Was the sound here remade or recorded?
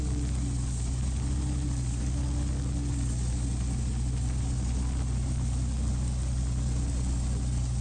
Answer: recorded